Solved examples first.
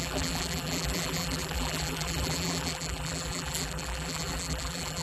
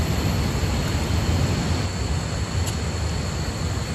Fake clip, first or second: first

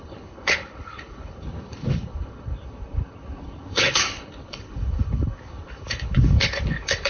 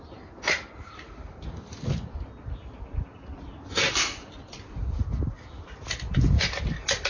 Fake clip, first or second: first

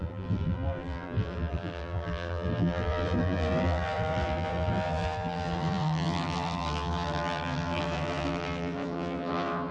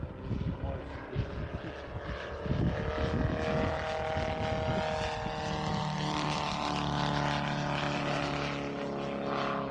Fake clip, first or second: first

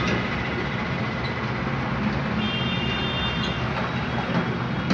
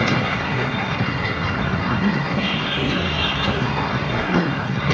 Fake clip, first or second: second